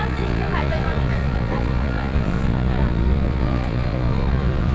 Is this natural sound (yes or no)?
no